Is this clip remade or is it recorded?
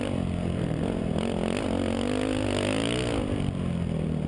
recorded